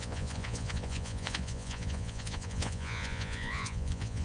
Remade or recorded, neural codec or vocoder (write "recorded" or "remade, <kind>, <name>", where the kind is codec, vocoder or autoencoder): remade, vocoder, Vocos